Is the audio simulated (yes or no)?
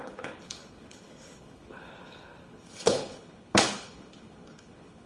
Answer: yes